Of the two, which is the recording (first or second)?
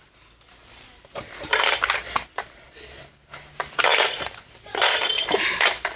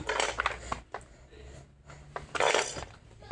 second